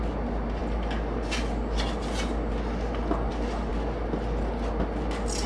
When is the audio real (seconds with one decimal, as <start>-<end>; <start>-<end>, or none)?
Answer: 0.0-5.5